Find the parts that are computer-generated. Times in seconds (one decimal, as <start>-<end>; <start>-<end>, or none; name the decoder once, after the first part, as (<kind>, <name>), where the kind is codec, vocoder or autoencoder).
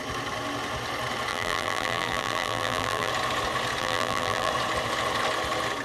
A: 1.3-3.1 (vocoder, BigVGAN v2); 3.8-4.5